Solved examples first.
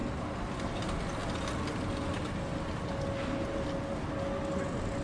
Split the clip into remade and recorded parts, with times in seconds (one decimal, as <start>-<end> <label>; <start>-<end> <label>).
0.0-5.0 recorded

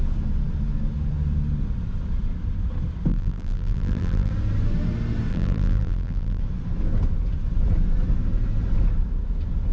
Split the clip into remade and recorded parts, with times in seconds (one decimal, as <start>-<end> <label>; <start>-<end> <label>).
0.0-3.1 recorded; 3.1-4.3 remade; 4.3-5.3 recorded; 5.3-6.4 remade; 6.4-9.7 recorded

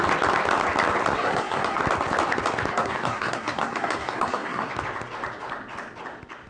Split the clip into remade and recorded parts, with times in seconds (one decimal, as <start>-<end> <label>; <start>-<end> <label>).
0.0-1.1 recorded; 1.1-1.8 remade; 1.8-2.7 recorded; 2.7-4.7 remade; 4.7-6.5 recorded

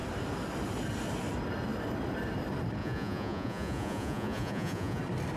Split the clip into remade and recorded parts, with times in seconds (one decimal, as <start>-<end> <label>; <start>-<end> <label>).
0.0-2.8 recorded; 2.8-5.0 remade; 5.0-5.4 recorded

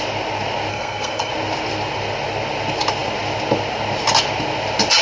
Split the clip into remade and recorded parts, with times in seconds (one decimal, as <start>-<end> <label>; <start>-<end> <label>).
0.0-0.7 recorded; 0.7-1.3 remade; 1.3-5.0 recorded

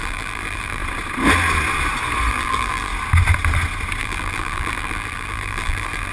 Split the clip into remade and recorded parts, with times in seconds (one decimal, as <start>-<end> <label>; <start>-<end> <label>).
0.0-0.8 remade; 0.8-2.3 recorded; 2.3-2.9 remade; 2.9-4.0 recorded; 4.0-6.1 remade

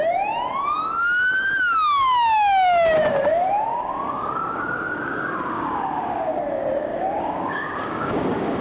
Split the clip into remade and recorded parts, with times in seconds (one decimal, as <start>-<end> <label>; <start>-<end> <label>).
0.0-3.7 recorded; 3.7-6.4 remade; 6.4-6.9 recorded; 6.9-8.6 remade

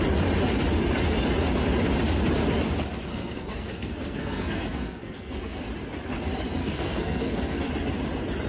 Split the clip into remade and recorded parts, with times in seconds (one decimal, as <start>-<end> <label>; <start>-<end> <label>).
0.0-3.1 recorded; 3.1-5.7 remade; 5.7-6.6 recorded; 6.6-7.7 remade; 7.7-8.5 recorded